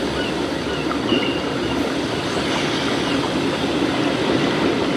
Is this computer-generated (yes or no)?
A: no